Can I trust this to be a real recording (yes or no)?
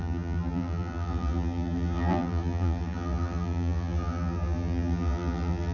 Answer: no